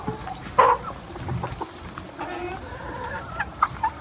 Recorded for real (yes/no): yes